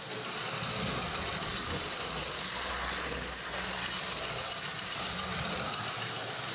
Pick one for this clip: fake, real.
real